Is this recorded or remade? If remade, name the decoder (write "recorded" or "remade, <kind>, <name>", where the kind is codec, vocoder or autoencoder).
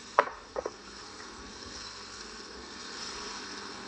remade, codec, SNAC